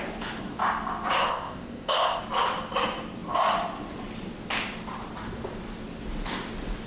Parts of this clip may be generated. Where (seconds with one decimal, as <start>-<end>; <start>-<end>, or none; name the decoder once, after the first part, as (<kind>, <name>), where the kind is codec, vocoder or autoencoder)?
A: 1.3-2.2 (codec, ZipCodec)